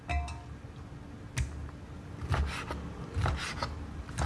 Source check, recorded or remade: recorded